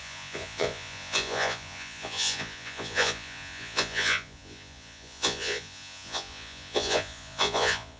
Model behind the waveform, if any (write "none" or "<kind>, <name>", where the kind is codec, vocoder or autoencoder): vocoder, Vocos